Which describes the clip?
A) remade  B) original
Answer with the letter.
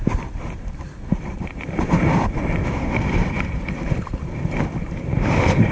A